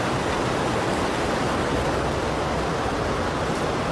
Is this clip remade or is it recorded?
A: recorded